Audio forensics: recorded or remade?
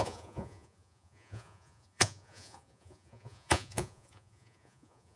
remade